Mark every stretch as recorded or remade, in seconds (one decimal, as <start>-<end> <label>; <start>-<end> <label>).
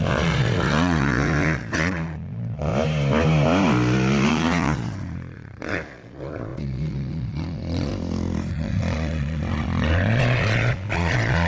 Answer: 0.0-2.7 remade; 2.7-4.3 recorded; 4.3-7.9 remade; 7.9-8.5 recorded; 8.5-11.5 remade